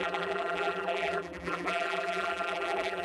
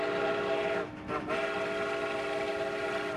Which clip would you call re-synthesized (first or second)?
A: first